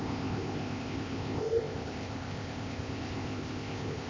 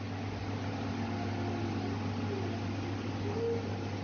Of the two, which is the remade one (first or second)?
first